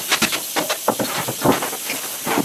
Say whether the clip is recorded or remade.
recorded